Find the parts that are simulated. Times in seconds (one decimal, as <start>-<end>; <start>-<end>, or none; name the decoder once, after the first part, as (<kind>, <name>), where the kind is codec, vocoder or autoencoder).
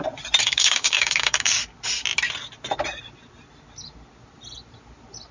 0.4-1.5 (codec, DAC)